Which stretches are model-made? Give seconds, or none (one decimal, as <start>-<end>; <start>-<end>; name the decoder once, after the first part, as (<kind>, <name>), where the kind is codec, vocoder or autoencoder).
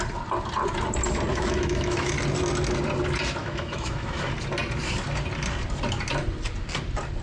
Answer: 1.3-2.1 (autoencoder, DAC-VAE); 3.4-4.3